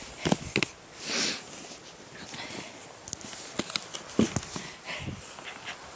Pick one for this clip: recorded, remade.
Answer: recorded